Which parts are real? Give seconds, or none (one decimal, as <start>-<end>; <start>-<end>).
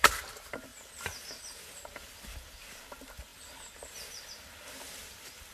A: 0.0-5.5